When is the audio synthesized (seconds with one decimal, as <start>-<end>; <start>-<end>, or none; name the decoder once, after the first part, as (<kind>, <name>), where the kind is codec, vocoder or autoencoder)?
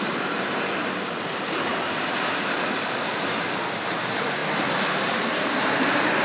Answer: 0.0-1.7 (vocoder, BigVGAN v2); 2.3-6.2